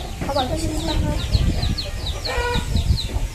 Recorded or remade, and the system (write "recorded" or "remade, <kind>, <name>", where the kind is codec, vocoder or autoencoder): recorded